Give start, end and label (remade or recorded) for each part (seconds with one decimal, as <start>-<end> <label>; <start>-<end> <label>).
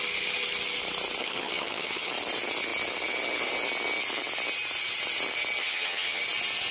0.0-1.2 recorded; 1.2-2.1 remade; 2.1-5.6 recorded; 5.6-6.2 remade; 6.2-6.7 recorded